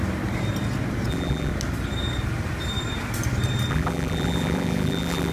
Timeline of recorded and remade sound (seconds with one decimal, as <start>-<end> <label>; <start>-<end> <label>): 0.0-1.1 recorded; 1.1-1.5 remade; 1.5-3.7 recorded; 3.7-5.3 remade